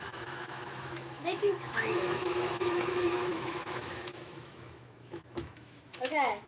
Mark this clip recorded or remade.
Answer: remade